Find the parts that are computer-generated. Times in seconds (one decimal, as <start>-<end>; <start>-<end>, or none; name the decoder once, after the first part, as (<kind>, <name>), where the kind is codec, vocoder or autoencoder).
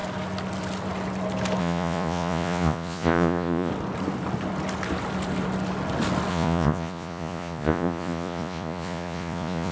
1.6-3.7 (vocoder, Vocos); 6.3-9.7